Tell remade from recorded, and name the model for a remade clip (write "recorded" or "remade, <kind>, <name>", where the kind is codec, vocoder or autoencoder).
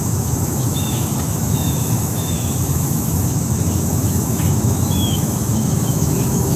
remade, autoencoder, DAC-VAE